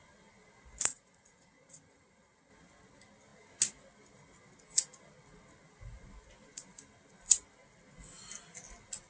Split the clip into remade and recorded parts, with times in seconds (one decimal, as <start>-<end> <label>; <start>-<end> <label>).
0.0-0.9 recorded; 0.9-2.5 remade; 2.5-9.1 recorded